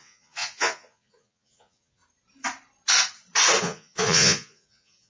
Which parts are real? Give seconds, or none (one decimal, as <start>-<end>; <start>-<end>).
2.0-3.6